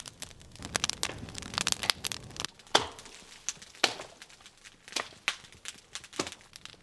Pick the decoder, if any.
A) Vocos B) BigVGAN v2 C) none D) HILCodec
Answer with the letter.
C